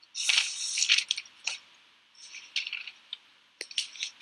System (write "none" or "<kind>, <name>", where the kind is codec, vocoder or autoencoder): none